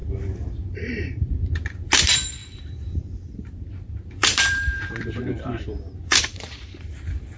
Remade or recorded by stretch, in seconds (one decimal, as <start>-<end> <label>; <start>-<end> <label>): 0.0-7.4 remade